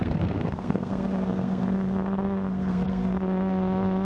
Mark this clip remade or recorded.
remade